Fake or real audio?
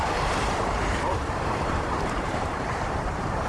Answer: fake